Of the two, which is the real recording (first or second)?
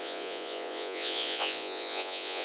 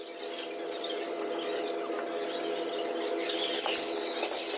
second